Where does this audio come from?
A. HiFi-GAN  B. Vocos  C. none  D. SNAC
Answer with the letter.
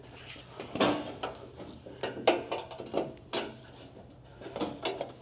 C